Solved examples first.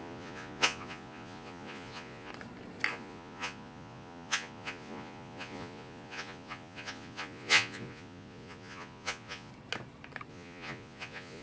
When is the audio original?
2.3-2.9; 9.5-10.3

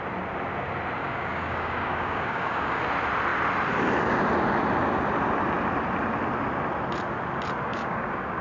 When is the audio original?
0.0-1.0; 2.8-7.7